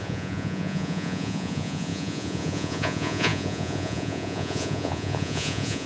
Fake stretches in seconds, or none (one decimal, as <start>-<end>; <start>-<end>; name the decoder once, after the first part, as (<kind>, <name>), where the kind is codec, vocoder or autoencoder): 0.0-5.9 (vocoder, Vocos)